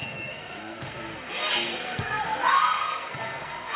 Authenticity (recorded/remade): remade